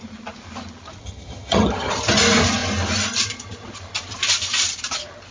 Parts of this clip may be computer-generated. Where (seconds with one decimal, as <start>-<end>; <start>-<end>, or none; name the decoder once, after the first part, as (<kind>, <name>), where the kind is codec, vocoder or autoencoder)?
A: 1.0-1.9 (vocoder, HiFi-GAN)